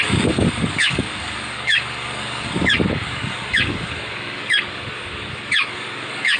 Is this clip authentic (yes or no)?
no